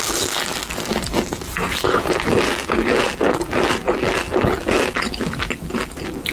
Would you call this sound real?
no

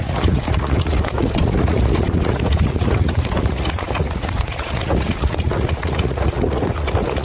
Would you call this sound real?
no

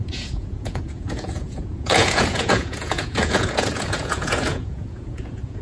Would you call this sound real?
no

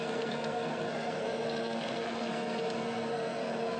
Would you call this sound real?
no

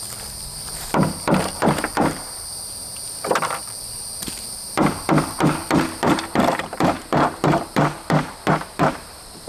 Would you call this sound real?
no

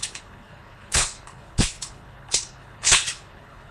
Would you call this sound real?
no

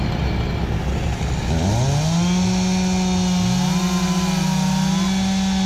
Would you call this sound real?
yes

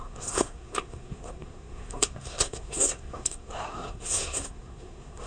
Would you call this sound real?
no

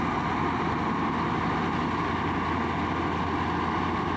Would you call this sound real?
yes